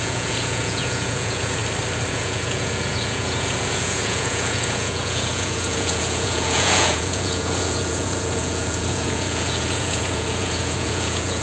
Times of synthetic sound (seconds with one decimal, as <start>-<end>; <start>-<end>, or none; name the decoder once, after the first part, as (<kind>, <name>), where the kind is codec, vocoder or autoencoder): 0.0-1.6 (vocoder, Vocos); 2.1-11.4